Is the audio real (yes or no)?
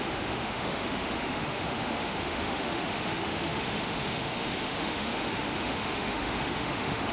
no